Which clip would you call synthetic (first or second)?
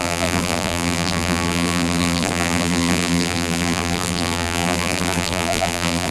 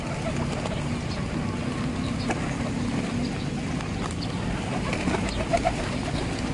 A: first